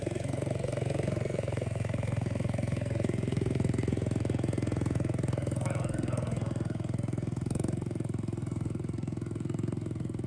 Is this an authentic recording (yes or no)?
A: no